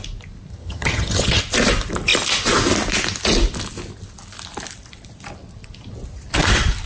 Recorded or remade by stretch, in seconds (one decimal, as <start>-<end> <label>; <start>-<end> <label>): 0.0-0.5 recorded; 0.5-1.4 remade; 1.4-6.9 recorded